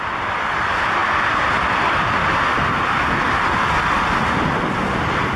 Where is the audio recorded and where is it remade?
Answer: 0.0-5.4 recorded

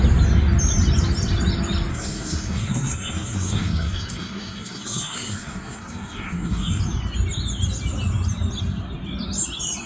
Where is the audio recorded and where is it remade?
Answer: 0.0-1.9 recorded; 1.9-6.8 remade; 6.8-9.9 recorded

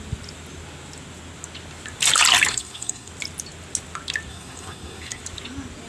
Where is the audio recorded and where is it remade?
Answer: 0.0-2.5 recorded; 2.5-3.1 remade; 3.1-4.3 recorded; 4.3-5.2 remade; 5.2-5.9 recorded